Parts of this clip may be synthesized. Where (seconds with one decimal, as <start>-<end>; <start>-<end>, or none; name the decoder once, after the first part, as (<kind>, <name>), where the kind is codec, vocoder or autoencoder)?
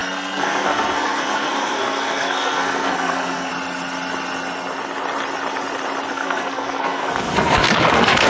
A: 0.0-3.5 (codec, SNAC); 6.1-8.3